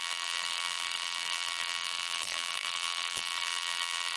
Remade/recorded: remade